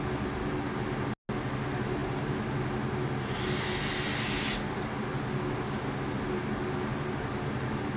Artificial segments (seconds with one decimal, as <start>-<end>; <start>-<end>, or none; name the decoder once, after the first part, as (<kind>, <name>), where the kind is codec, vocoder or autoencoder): none

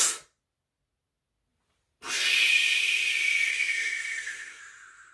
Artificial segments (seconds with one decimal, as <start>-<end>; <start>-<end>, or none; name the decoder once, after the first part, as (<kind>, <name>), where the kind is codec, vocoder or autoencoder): 3.5-4.6 (codec, SNAC)

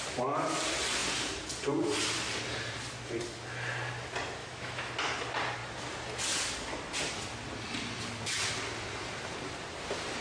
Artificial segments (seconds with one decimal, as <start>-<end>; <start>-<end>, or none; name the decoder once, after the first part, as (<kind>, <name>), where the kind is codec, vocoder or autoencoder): 4.4-4.9 (autoencoder, DAC-VAE)

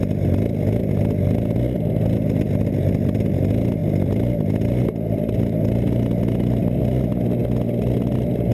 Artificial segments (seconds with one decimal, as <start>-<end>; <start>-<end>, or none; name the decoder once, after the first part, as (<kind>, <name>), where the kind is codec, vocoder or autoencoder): none

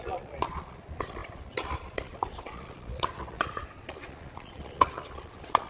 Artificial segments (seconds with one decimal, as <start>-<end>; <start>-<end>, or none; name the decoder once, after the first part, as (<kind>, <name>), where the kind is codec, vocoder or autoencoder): 0.0-5.7 (vocoder, Vocos)